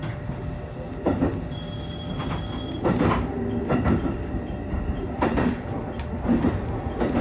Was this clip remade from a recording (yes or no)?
no